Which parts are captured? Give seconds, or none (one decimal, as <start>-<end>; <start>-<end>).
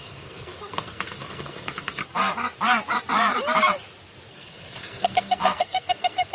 2.0-4.3